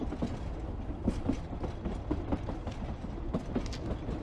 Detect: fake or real real